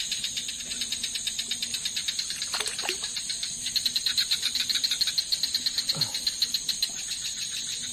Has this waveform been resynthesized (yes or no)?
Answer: yes